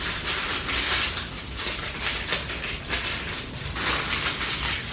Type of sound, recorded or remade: recorded